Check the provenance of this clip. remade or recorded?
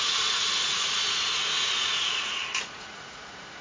remade